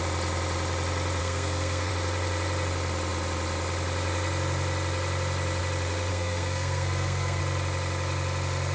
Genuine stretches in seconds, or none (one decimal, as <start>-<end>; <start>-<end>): 0.0-1.2; 1.9-6.1; 7.4-8.7